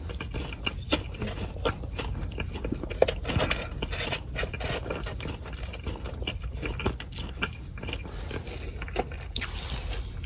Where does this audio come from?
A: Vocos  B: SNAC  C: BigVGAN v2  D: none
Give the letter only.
D